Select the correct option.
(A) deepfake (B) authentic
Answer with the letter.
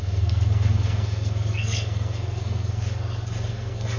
A